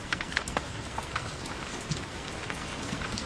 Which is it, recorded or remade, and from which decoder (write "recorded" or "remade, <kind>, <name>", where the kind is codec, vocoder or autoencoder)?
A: remade, codec, SNAC